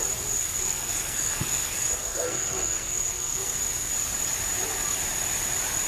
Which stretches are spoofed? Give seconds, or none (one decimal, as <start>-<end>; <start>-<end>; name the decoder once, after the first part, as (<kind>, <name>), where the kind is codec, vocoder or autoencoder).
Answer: 0.4-3.9 (codec, SNAC)